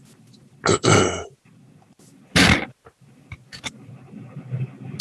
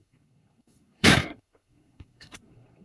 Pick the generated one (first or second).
second